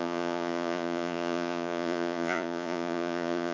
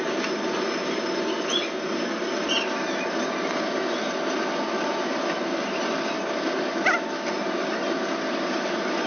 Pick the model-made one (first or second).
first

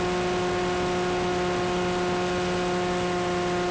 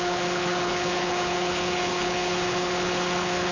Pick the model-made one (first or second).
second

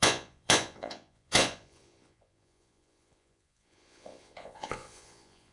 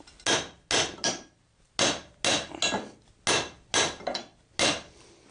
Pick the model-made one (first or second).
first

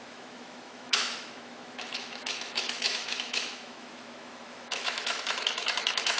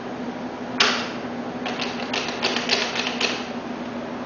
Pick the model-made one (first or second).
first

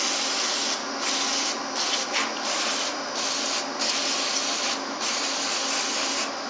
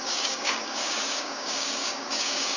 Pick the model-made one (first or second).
second